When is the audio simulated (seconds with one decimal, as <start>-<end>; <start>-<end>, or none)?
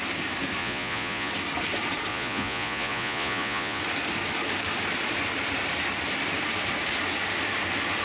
0.6-1.3; 2.1-3.8